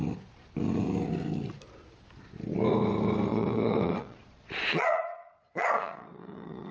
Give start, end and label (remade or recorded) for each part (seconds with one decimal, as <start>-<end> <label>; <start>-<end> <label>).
0.0-3.3 recorded; 3.3-6.7 remade